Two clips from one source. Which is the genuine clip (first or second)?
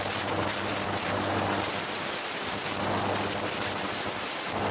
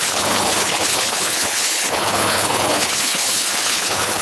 first